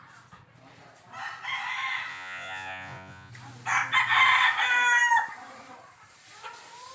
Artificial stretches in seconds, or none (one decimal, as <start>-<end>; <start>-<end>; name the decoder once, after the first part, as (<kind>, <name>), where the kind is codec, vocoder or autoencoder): 2.1-3.3 (vocoder, Vocos)